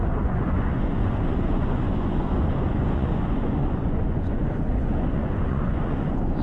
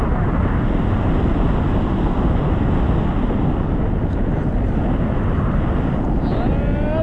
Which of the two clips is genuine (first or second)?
second